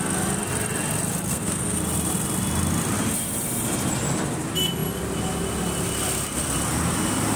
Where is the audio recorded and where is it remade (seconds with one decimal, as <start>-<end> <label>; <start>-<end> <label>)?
0.0-1.3 recorded; 1.3-1.8 remade; 1.8-7.4 recorded